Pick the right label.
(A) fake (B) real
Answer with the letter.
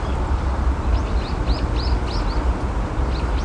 B